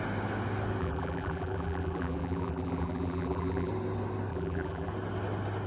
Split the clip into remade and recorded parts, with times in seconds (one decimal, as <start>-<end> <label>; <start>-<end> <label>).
0.0-0.8 recorded; 0.8-3.7 remade; 3.7-4.3 recorded; 4.3-4.9 remade; 4.9-5.7 recorded

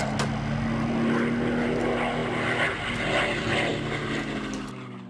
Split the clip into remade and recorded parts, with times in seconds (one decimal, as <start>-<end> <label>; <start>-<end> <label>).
0.0-5.1 recorded